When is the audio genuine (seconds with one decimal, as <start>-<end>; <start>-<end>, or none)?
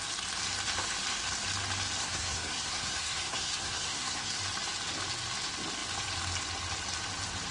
0.0-2.0; 4.4-7.5